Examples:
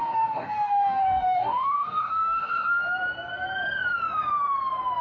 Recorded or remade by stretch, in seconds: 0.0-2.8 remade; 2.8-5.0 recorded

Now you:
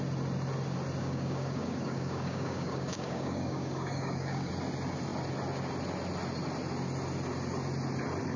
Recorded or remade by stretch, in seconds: 0.0-1.0 recorded; 1.0-4.5 remade; 4.5-8.4 recorded